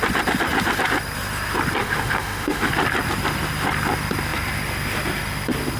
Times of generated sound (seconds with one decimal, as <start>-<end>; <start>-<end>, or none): 1.8-2.7